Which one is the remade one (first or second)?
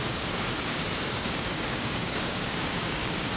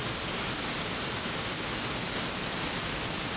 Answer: first